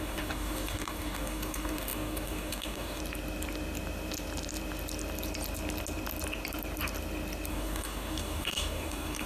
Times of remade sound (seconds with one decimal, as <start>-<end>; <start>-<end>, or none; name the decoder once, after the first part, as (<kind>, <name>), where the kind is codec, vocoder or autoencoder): 0.0-3.0 (codec, DAC); 7.5-9.3